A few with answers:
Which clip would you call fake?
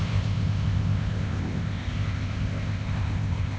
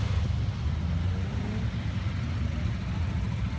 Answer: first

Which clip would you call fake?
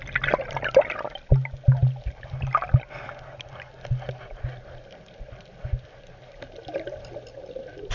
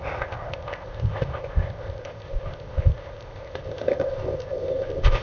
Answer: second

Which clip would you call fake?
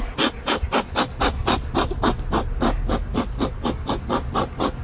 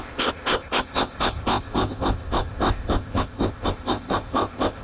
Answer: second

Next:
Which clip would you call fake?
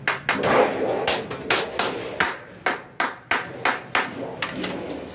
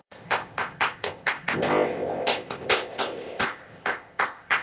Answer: second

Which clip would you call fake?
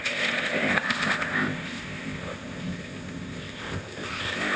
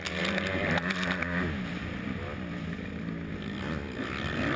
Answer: first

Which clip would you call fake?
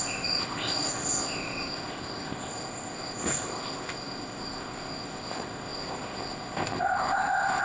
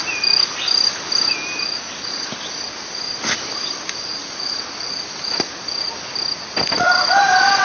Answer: first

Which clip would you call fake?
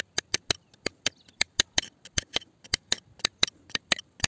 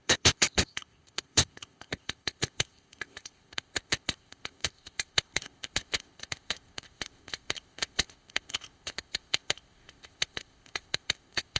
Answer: second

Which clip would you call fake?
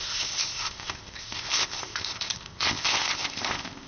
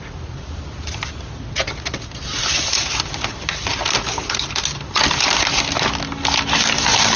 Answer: first